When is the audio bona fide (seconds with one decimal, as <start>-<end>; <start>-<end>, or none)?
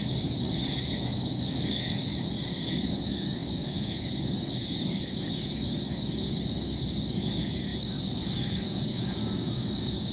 none